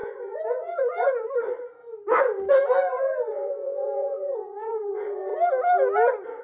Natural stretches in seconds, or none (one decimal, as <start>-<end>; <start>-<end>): 1.8-2.5; 5.3-6.4